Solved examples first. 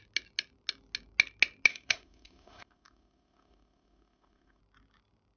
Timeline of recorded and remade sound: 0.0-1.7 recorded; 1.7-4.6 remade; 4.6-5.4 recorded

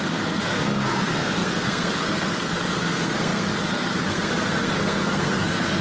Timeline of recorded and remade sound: 0.0-5.8 remade